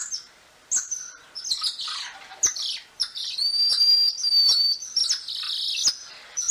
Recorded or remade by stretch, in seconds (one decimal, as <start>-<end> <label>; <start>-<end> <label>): 0.0-6.5 recorded